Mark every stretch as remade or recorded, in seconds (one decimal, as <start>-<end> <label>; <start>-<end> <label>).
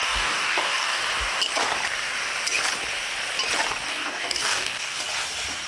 0.0-1.0 remade; 1.0-3.9 recorded; 3.9-5.0 remade; 5.0-5.7 recorded